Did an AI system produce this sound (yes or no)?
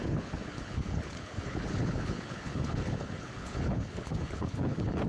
yes